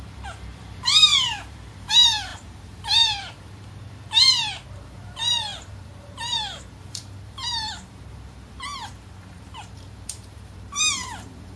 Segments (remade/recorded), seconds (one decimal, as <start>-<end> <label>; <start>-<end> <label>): 0.0-11.6 remade